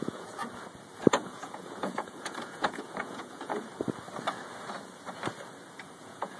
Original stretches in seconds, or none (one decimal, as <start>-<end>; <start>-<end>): 0.4-1.1; 3.7-6.0